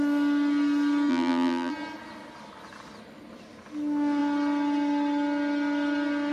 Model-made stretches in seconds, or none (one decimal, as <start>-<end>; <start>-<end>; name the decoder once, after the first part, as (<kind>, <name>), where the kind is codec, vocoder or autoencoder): 1.1-1.7 (vocoder, BigVGAN v2)